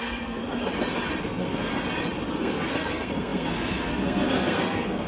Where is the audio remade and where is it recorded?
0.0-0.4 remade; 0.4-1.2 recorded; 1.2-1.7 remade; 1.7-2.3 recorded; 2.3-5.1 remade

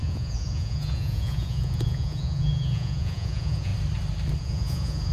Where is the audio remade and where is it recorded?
0.0-3.7 remade; 3.7-4.4 recorded; 4.4-5.1 remade

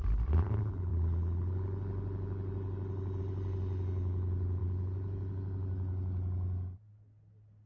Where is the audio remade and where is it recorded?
0.0-7.7 recorded

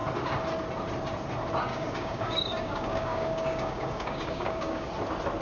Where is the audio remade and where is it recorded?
0.0-1.7 recorded; 1.7-4.9 remade; 4.9-5.4 recorded

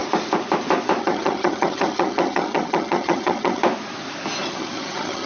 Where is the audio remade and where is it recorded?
0.0-1.0 recorded; 1.0-3.6 remade; 3.6-4.5 recorded; 4.5-5.3 remade